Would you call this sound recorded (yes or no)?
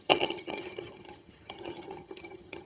no